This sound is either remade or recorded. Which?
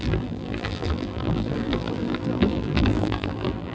remade